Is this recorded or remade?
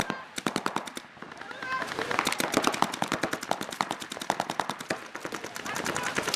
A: recorded